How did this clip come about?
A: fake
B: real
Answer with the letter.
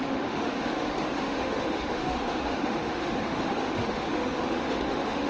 A